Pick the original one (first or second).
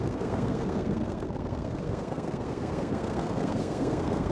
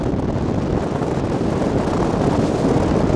second